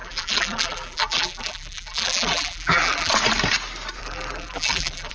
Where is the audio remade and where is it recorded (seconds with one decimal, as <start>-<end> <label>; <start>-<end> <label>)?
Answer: 0.0-3.1 remade; 3.1-4.0 recorded; 4.0-5.1 remade